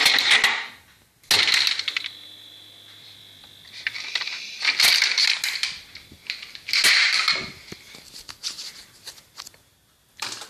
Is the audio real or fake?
real